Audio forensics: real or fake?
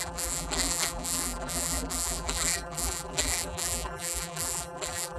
fake